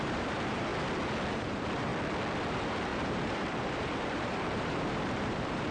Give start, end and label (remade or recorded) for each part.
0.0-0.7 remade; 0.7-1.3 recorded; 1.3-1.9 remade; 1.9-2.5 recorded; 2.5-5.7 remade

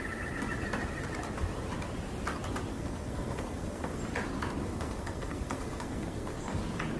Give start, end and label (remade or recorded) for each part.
0.0-2.7 recorded; 2.7-4.0 remade; 4.0-4.6 recorded; 4.6-6.6 remade; 6.6-7.0 recorded

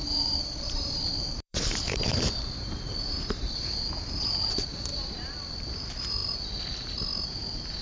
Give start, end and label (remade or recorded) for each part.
0.0-3.9 remade; 3.9-4.9 recorded; 4.9-5.5 remade; 5.5-7.8 recorded

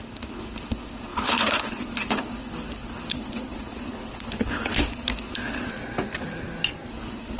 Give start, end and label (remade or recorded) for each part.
0.0-5.7 remade; 5.7-6.9 recorded; 6.9-7.4 remade

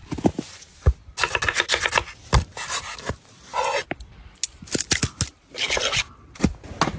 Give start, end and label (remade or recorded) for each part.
0.0-7.0 recorded

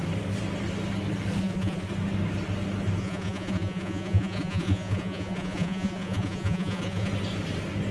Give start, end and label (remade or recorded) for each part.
0.0-1.4 recorded; 1.4-1.9 remade; 1.9-3.0 recorded; 3.0-7.1 remade; 7.1-7.9 recorded

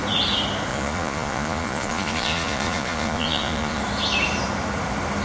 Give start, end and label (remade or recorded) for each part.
0.0-0.7 recorded; 0.7-3.8 remade; 3.8-5.2 recorded

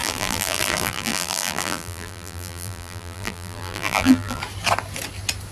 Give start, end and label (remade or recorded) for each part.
0.0-4.4 remade; 4.4-5.5 recorded